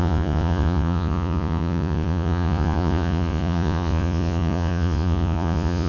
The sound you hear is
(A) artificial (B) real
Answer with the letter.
A